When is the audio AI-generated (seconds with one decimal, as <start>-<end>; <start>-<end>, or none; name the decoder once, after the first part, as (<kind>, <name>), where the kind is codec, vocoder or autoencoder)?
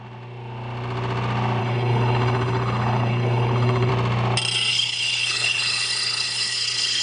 1.6-3.9 (codec, HILCodec); 4.7-7.0